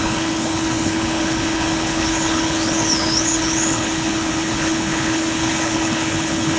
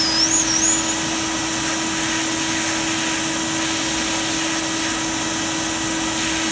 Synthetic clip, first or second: first